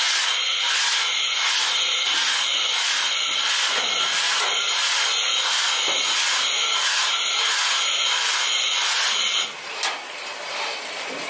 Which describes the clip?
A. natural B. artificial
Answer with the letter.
A